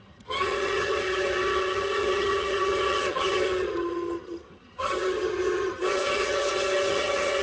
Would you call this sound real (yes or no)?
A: no